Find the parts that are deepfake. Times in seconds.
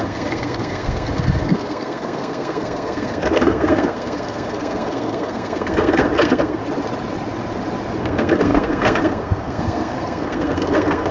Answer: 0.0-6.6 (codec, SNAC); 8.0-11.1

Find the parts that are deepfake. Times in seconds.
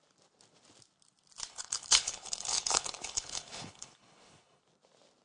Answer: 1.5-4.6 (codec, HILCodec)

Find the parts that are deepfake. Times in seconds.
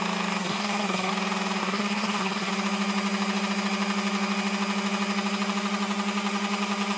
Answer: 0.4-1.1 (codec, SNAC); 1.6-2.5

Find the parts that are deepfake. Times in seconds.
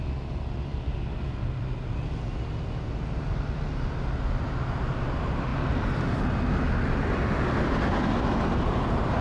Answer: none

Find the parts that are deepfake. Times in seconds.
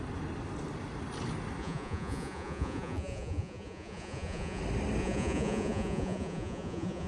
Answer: 1.6-4.6 (vocoder, Vocos); 5.0-7.1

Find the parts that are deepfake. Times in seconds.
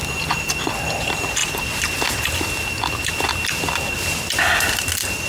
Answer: none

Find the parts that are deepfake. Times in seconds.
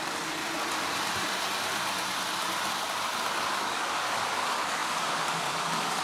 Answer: 0.0-0.4 (codec, DAC); 3.4-6.0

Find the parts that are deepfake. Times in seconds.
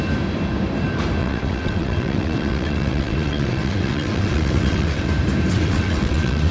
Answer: 1.2-5.1 (vocoder, WaveNeXt); 5.5-6.5